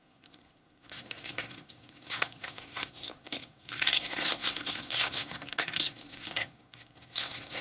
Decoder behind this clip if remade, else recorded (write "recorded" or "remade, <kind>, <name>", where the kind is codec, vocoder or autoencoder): remade, codec, SNAC